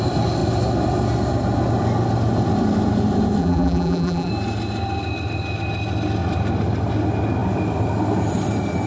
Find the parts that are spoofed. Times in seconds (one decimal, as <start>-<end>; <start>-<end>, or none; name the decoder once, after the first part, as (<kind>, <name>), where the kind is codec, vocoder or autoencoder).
3.4-4.3 (vocoder, BigVGAN v2)